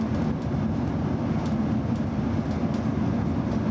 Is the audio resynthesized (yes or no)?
no